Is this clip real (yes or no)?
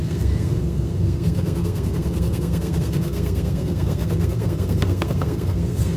no